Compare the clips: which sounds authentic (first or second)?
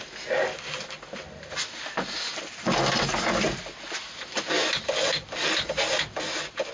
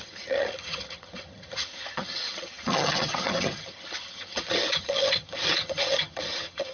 first